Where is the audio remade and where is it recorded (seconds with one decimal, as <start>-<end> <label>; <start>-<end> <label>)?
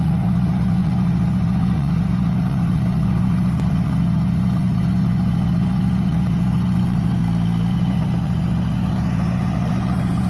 0.0-7.2 remade; 7.2-7.7 recorded; 7.7-10.3 remade